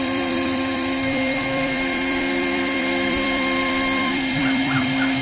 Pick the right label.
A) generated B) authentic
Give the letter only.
A